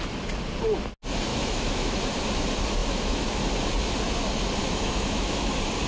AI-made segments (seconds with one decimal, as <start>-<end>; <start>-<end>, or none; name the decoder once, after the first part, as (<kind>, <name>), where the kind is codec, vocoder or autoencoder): 1.3-2.0 (autoencoder, DAC-VAE); 2.8-3.4; 4.6-5.5